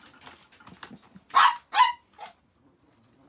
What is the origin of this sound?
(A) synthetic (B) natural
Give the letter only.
B